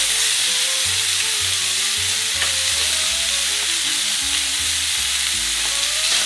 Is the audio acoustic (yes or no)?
yes